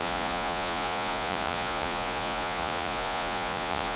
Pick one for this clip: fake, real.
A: fake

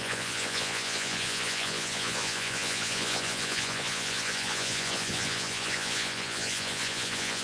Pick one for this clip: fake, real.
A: fake